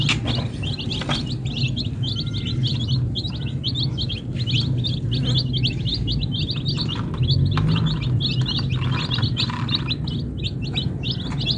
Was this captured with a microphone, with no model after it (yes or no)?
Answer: yes